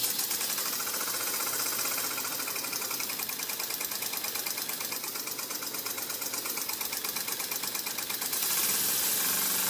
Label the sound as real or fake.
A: real